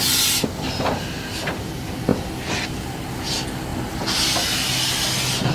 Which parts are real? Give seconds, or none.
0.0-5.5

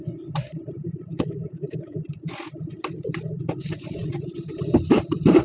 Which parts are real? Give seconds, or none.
0.0-1.1; 2.0-5.4

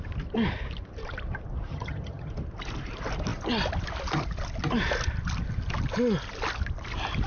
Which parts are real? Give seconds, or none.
0.0-1.7; 2.3-7.3

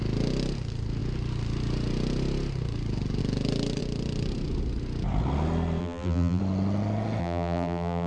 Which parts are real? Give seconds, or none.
0.0-5.8; 6.4-7.2

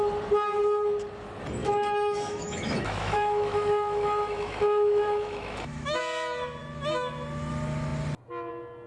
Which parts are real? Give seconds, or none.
0.0-1.6; 6.0-8.9

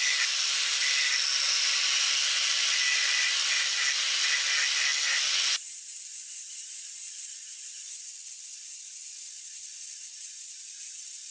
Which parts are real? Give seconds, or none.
0.0-11.3

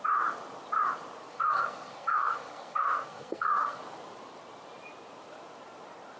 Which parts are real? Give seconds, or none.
0.0-1.3; 3.8-6.2